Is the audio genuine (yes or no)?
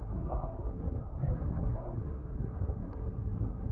no